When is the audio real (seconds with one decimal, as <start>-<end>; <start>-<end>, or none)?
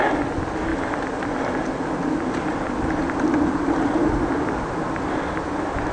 0.0-5.9